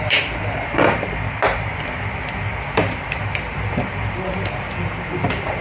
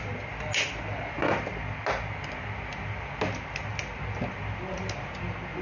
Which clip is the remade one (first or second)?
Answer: first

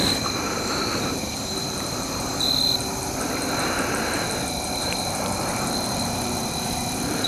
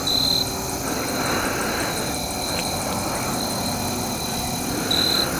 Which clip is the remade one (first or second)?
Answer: first